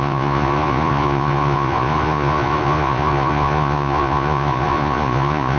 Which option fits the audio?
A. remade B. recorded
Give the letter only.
A